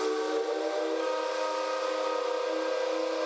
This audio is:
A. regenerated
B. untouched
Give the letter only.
B